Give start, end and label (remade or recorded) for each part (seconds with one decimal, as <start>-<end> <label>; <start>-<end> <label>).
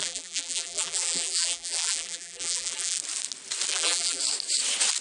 0.0-3.0 remade; 3.0-3.7 recorded; 3.7-4.2 remade; 4.2-5.0 recorded